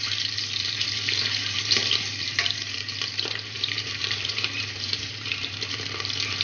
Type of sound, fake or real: fake